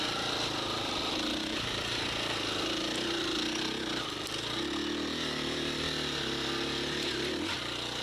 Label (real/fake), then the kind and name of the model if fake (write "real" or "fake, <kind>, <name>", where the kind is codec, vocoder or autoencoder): real